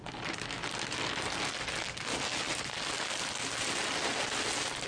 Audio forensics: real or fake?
real